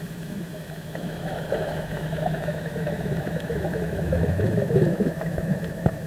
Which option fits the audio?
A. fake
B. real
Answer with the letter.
A